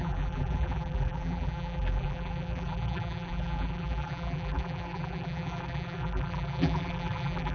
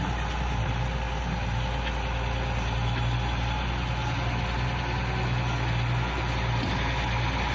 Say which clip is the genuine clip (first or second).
second